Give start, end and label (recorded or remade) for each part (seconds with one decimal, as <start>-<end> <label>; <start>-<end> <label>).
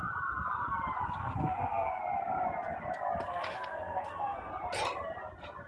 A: 0.0-1.2 recorded; 1.2-2.0 remade; 2.0-3.3 recorded; 3.3-4.5 remade; 4.5-5.7 recorded